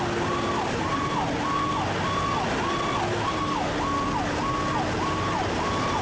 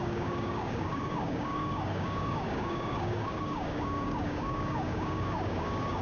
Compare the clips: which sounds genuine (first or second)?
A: first